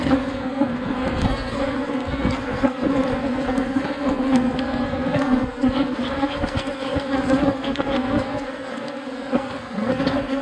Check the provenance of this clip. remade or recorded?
remade